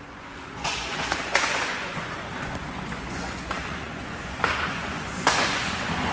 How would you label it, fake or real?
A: fake